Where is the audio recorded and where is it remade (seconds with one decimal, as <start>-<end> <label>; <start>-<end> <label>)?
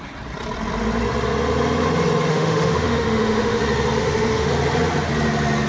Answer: 0.0-2.3 recorded; 2.3-3.6 remade; 3.6-4.0 recorded; 4.0-4.5 remade; 4.5-5.7 recorded